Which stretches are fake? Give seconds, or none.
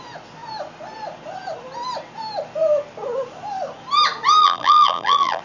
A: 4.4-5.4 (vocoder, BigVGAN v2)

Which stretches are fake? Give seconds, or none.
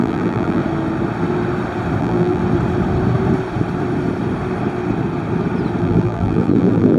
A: 0.0-0.6 (vocoder, BigVGAN v2); 2.0-2.4; 5.8-7.0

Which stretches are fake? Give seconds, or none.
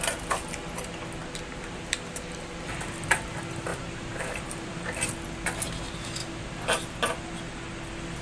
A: 1.2-3.2 (vocoder, BigVGAN v2); 3.7-5.1; 6.2-6.8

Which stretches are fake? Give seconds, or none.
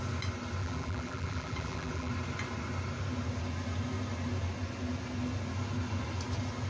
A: 0.6-2.1 (vocoder, BigVGAN v2)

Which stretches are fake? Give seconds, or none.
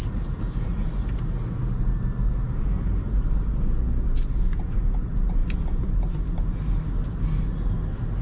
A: 0.0-1.3 (vocoder, BigVGAN v2)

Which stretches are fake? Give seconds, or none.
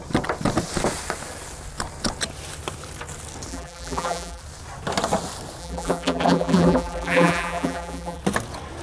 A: 3.5-4.4 (vocoder, BigVGAN v2); 5.6-8.2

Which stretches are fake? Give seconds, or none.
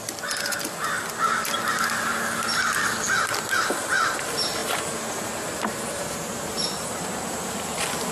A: 4.6-7.5 (vocoder, BigVGAN v2)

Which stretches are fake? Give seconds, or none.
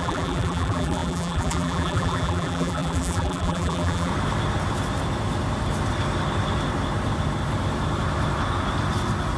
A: 0.0-4.1 (vocoder, BigVGAN v2)